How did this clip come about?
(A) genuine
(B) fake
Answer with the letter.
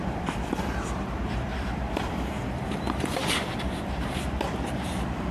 B